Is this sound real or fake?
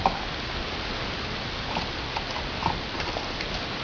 real